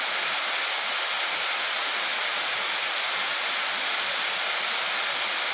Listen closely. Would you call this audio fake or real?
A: real